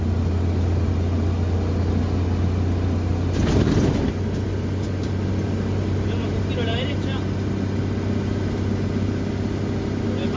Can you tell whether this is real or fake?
real